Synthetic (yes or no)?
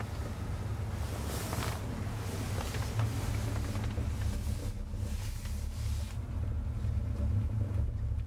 no